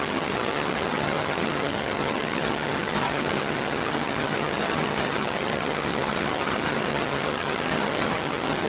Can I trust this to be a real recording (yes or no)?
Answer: no